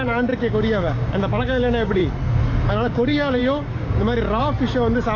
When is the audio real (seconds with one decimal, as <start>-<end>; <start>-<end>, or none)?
2.0-2.7; 4.4-5.2